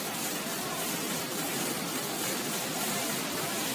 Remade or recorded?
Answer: remade